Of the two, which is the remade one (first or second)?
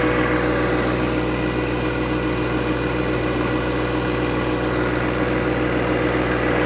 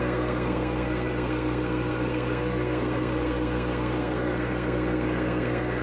second